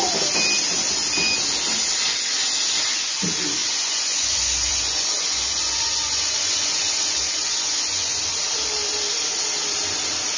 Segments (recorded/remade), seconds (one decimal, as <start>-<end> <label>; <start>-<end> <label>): 0.0-3.6 recorded; 3.6-8.2 remade; 8.2-10.4 recorded